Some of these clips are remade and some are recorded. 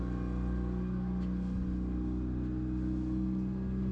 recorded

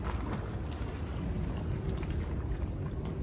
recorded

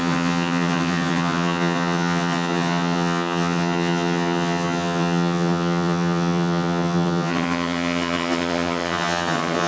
remade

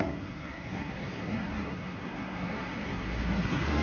remade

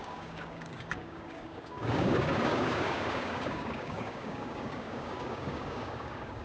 remade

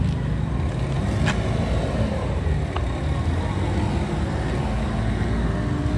recorded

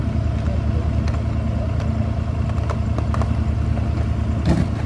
recorded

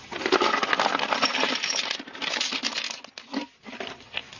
recorded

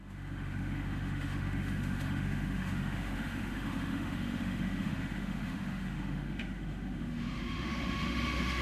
remade